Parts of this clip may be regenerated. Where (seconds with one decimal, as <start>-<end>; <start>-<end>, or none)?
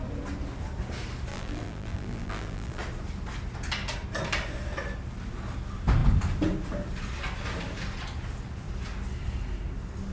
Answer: 1.3-2.8